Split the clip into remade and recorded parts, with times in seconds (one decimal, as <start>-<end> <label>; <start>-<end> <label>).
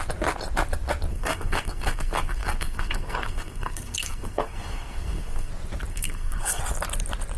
0.0-1.1 recorded; 1.1-5.5 remade; 5.5-5.9 recorded; 5.9-6.6 remade; 6.6-7.4 recorded